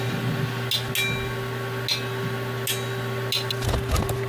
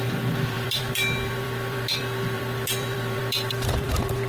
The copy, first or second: second